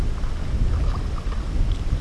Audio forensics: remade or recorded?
recorded